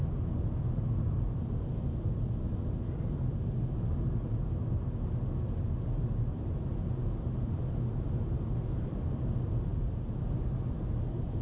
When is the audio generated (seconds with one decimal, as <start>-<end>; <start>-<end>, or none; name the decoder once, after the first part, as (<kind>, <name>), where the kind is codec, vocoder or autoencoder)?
none